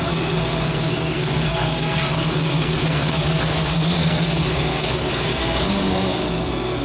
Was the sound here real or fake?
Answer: fake